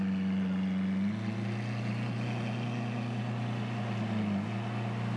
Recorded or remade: recorded